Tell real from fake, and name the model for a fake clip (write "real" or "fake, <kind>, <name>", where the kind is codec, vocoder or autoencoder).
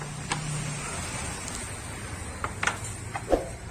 real